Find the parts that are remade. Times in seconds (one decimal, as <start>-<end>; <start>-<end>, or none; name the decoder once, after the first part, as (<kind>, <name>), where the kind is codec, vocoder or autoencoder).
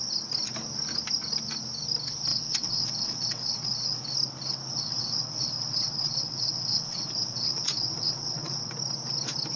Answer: 2.3-4.0 (vocoder, WaveNeXt); 4.7-8.7